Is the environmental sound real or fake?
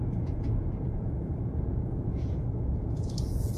fake